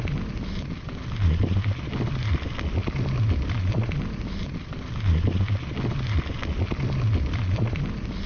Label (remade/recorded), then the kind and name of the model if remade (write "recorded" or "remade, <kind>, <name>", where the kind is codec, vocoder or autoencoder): recorded